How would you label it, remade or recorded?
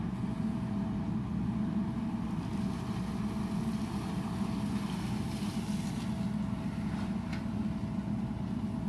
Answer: recorded